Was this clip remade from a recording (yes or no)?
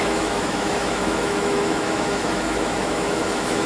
yes